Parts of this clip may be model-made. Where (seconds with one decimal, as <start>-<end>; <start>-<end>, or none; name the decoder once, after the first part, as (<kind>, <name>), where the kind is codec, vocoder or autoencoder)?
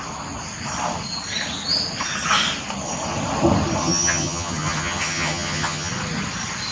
3.8-5.9 (vocoder, HiFi-GAN)